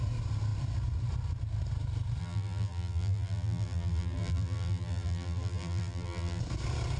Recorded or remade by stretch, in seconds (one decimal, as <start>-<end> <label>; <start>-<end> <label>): 0.0-2.2 recorded; 2.2-6.4 remade; 6.4-7.0 recorded